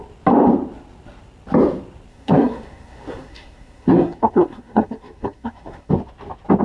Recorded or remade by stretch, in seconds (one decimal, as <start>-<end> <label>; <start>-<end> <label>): 0.0-2.1 recorded; 2.1-5.9 remade; 5.9-6.6 recorded